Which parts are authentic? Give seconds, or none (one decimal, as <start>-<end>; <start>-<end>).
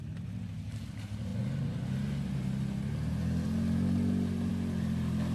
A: 0.0-5.3